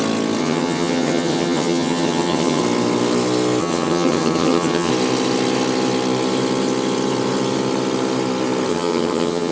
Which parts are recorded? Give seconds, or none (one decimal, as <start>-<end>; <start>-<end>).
0.0-0.4; 2.6-3.6; 4.9-8.7